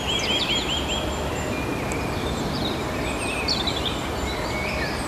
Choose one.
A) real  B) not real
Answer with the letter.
A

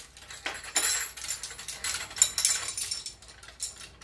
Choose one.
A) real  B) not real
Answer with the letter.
A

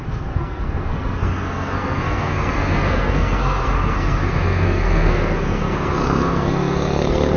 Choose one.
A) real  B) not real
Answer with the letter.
B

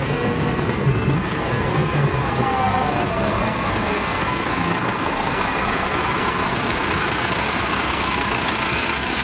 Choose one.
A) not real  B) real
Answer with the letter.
A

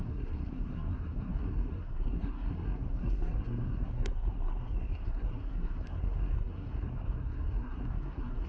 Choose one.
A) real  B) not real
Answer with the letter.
B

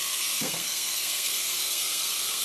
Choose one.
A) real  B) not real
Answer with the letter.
B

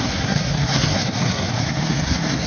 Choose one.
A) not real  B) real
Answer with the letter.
A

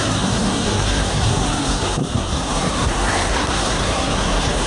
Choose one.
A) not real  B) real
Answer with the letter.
A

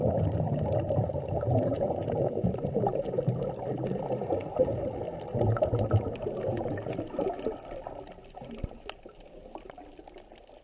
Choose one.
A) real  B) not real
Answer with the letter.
A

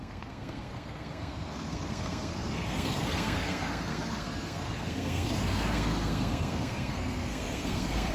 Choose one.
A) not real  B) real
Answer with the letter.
A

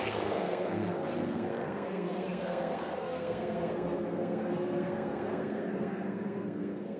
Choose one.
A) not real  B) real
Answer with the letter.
A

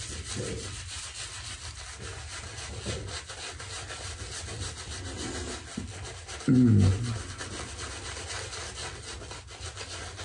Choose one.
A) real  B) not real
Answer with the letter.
A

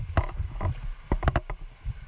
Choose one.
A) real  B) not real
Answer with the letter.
A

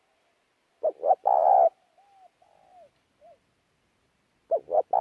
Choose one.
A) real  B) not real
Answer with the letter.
A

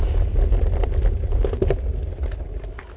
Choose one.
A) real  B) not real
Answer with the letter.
A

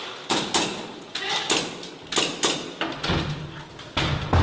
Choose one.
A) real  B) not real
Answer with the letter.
A